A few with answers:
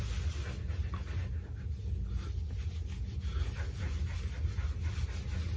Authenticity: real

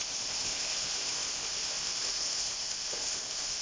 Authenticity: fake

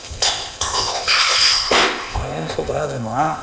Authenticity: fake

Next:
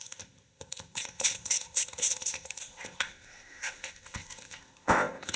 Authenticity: fake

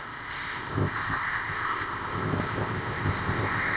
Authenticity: fake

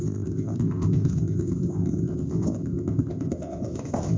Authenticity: fake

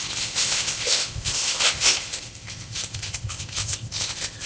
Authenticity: fake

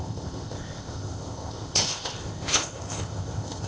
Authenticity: fake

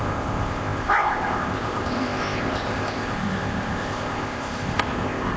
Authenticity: fake